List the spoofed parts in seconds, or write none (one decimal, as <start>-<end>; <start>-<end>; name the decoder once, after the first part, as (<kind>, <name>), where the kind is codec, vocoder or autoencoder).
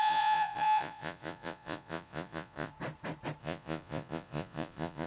0.0-2.7 (vocoder, Vocos); 3.4-5.1